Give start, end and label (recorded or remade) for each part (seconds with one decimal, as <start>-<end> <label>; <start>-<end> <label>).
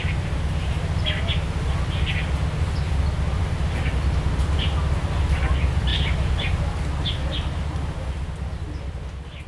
0.0-9.5 recorded